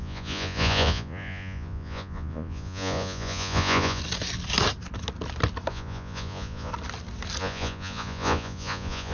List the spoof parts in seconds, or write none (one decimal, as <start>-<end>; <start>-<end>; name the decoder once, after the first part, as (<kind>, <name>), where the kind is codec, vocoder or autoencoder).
0.0-4.0 (vocoder, Vocos); 5.7-6.7; 7.4-9.1